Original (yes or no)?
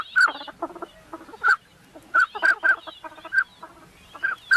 yes